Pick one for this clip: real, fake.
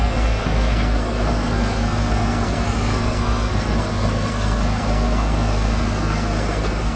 fake